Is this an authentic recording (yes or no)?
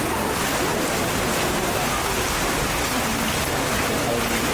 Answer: yes